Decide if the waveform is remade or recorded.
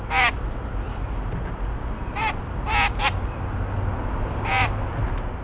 recorded